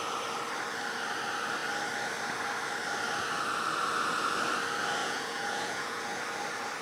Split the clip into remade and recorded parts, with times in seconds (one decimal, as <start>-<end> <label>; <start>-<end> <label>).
0.0-5.0 recorded; 5.0-6.2 remade; 6.2-6.8 recorded